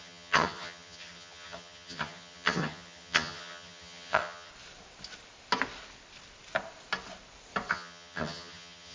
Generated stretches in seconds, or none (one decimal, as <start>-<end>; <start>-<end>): 0.0-4.5; 7.7-8.9